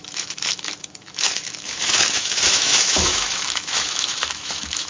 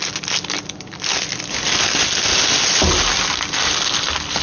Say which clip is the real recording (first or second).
second